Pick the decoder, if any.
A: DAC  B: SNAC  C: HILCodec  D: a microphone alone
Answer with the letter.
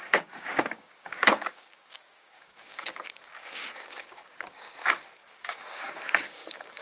A